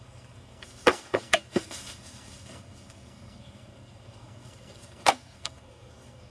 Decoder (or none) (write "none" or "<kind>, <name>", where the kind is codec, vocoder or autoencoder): codec, SNAC